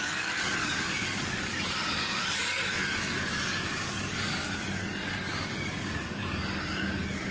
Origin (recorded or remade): remade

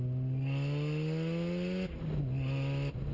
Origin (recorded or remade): recorded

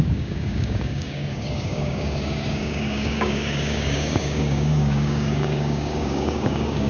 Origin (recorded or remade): remade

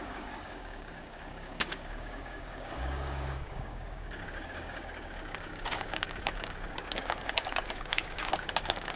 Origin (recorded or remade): remade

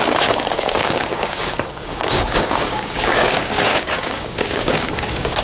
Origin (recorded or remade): remade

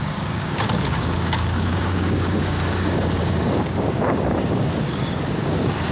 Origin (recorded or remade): remade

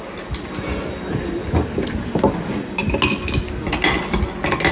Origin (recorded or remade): recorded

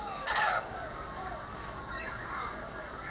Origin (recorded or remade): remade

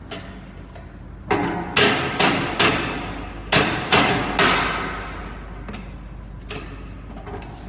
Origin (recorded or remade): recorded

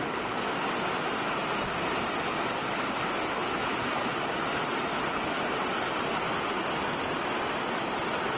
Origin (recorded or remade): recorded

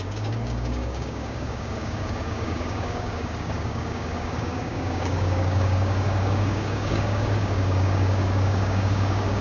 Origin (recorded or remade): remade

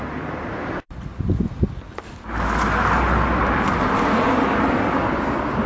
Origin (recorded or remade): recorded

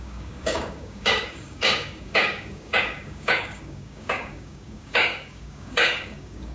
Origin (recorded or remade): remade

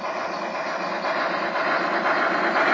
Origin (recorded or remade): recorded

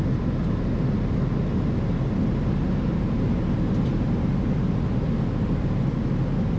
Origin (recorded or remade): recorded